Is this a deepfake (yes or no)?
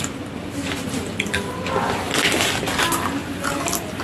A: no